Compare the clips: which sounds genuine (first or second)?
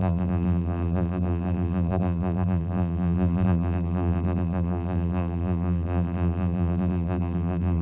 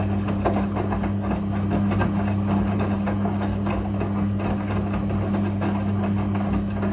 second